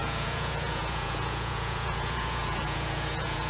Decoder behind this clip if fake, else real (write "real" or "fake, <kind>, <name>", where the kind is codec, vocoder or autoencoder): fake, vocoder, Vocos